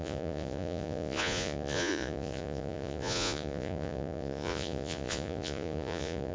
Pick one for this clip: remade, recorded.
remade